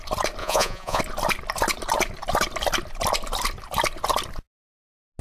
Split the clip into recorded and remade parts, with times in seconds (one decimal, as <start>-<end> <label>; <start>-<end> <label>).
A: 0.0-0.4 recorded; 0.4-1.0 remade; 1.0-5.2 recorded